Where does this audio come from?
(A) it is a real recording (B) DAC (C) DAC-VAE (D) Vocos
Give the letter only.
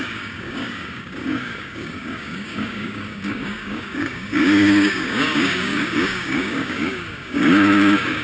B